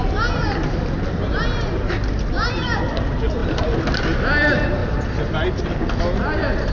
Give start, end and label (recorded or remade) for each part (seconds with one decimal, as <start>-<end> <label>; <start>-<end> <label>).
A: 0.0-6.7 recorded